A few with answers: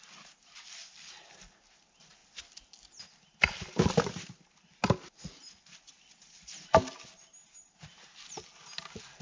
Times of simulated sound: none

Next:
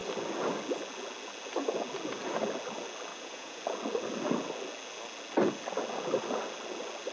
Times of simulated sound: 3.1-3.6 (vocoder, Vocos)

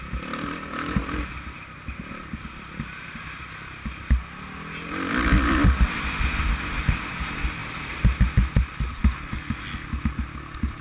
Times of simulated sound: none

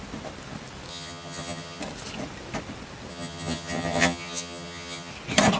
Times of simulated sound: 0.9-1.8 (vocoder, HiFi-GAN); 3.1-5.1